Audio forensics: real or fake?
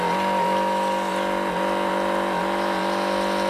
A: real